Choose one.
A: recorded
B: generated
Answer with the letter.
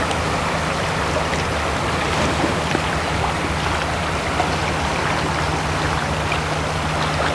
A